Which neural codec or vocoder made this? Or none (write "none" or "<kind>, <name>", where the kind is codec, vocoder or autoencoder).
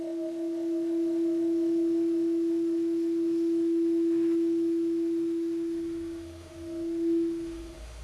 autoencoder, DAC-VAE